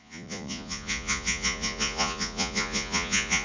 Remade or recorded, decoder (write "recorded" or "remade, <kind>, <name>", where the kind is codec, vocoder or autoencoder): remade, vocoder, Vocos